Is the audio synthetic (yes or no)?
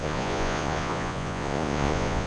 yes